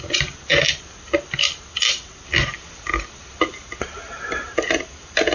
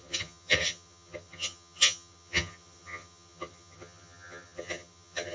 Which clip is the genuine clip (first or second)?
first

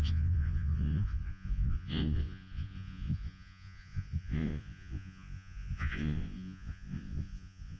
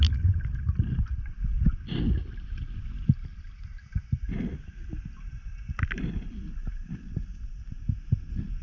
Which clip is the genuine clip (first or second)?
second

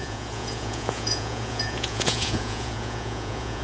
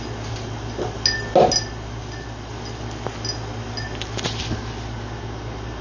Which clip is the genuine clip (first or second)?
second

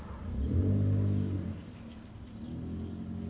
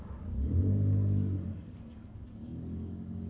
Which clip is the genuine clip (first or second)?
first